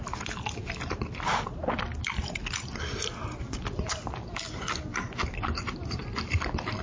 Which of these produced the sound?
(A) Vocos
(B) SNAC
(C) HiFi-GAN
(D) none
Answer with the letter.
D